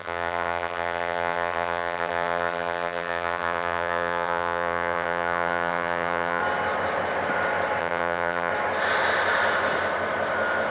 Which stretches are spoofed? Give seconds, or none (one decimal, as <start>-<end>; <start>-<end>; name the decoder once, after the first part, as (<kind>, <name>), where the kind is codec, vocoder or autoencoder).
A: 0.0-6.4 (vocoder, HiFi-GAN); 7.8-8.5